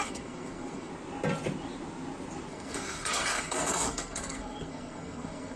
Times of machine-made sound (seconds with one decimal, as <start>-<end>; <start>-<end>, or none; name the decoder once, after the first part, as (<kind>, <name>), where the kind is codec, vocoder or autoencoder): 0.0-0.9 (codec, SNAC); 2.5-5.6